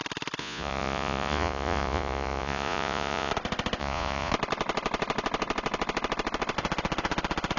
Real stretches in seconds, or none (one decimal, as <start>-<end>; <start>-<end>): 0.0-0.4; 3.3-3.8; 4.3-7.6

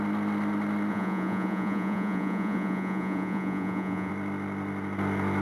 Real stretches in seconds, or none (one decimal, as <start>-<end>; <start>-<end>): 0.0-0.9; 4.1-5.4

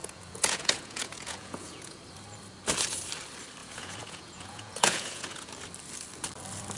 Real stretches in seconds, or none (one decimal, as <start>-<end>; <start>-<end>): 2.0-3.6; 5.5-6.8